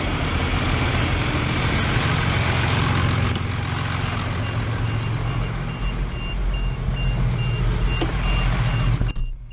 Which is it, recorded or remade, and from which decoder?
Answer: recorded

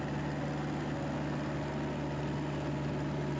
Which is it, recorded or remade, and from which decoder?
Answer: recorded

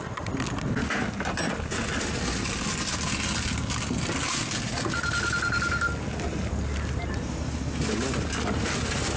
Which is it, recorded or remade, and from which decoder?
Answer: recorded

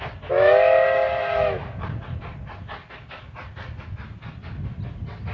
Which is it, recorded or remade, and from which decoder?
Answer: recorded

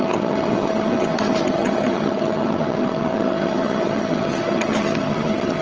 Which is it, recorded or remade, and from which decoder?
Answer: remade, vocoder, HiFi-GAN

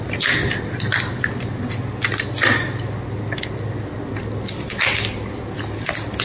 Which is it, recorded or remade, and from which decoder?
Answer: recorded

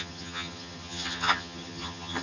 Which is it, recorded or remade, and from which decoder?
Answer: remade, vocoder, HiFi-GAN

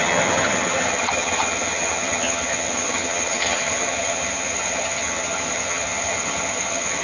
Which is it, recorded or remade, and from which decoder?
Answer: remade, vocoder, HiFi-GAN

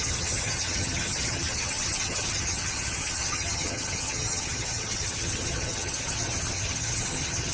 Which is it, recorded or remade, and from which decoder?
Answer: remade, vocoder, HiFi-GAN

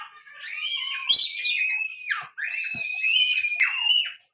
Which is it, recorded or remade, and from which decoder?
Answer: recorded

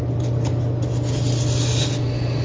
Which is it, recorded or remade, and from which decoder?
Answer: recorded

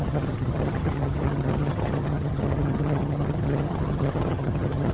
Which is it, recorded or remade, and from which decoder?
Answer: remade, vocoder, HiFi-GAN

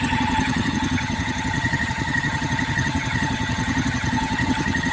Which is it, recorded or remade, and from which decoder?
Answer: remade, vocoder, HiFi-GAN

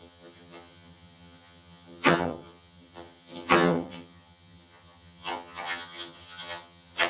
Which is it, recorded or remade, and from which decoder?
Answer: remade, vocoder, HiFi-GAN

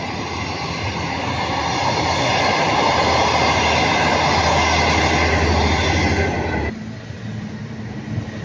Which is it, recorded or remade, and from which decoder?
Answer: recorded